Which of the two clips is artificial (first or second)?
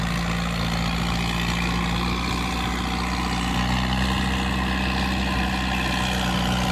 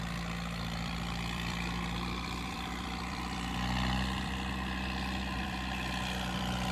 second